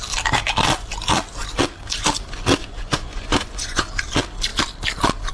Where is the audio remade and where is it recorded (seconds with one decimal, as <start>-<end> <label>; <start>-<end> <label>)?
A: 0.0-2.6 recorded; 2.6-3.8 remade; 3.8-5.3 recorded